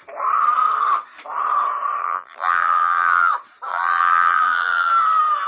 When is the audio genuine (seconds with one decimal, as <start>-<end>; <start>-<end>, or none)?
0.0-2.0; 3.3-3.7; 4.9-5.5